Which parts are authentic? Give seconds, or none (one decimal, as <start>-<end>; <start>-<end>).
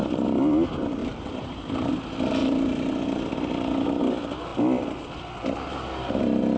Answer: 0.0-1.0; 1.9-2.4; 2.9-6.6